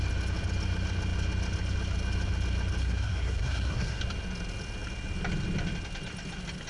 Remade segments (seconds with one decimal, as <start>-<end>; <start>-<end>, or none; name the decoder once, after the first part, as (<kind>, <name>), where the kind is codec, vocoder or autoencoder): 2.8-4.0 (codec, SNAC)